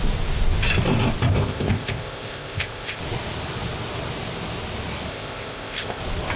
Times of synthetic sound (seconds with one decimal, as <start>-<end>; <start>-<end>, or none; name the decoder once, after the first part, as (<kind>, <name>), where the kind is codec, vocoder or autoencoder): 1.3-3.0 (codec, ZipCodec); 5.1-6.0